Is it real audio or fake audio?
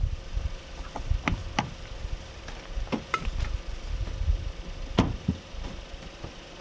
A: real